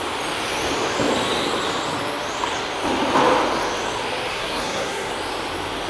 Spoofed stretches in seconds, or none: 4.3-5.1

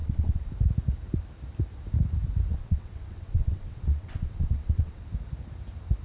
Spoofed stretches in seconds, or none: 0.0-0.5; 2.5-5.0

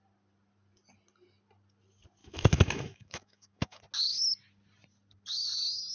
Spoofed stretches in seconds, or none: 2.2-3.8

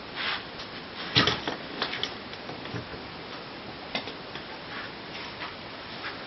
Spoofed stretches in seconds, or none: none

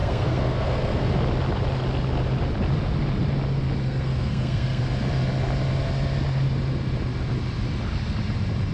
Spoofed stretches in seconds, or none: 0.0-1.1; 3.8-4.8